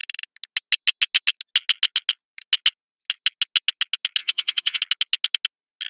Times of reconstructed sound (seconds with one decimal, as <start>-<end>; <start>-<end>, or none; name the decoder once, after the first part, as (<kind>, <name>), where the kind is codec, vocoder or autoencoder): 4.2-4.8 (vocoder, HiFi-GAN)